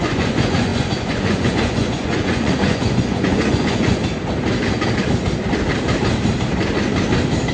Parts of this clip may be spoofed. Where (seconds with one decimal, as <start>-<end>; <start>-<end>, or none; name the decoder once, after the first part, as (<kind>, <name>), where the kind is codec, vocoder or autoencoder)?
0.0-4.0 (vocoder, Vocos)

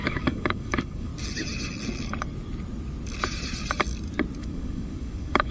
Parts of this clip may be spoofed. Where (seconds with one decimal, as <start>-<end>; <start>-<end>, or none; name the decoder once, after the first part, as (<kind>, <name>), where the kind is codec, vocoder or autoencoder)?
0.0-1.1 (codec, DAC); 4.4-5.5

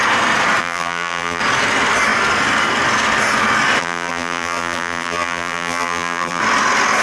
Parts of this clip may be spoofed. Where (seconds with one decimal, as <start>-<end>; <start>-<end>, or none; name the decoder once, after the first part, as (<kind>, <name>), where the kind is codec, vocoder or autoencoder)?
0.6-1.4 (vocoder, BigVGAN v2); 3.8-6.4

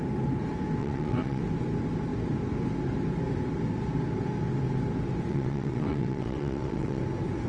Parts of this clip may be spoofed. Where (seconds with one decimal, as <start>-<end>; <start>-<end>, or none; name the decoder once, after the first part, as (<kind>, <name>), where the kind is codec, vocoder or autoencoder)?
0.8-1.4 (vocoder, WaveNeXt); 5.3-7.0

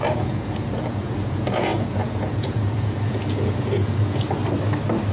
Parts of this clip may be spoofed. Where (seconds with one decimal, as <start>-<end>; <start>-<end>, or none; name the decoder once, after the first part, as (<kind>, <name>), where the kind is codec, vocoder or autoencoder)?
0.0-4.4 (vocoder, Vocos)